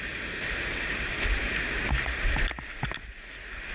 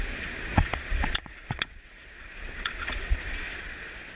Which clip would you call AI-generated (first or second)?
second